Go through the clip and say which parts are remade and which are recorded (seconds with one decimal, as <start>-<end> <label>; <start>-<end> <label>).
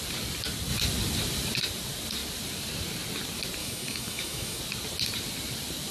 0.0-3.6 recorded; 3.6-4.6 remade; 4.6-5.9 recorded